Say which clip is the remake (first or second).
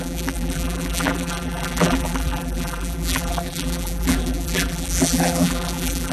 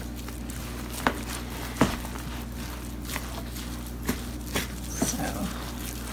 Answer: first